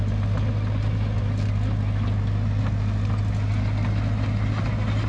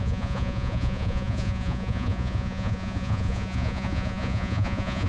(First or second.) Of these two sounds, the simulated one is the second